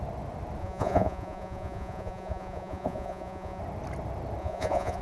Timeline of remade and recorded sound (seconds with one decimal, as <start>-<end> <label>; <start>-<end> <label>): 0.0-0.6 recorded; 0.6-3.6 remade; 3.6-4.4 recorded; 4.4-5.0 remade